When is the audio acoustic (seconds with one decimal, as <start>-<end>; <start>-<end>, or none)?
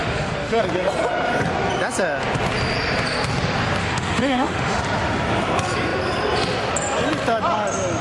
0.6-3.8; 4.8-8.0